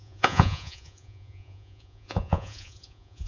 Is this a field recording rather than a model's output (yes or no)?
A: no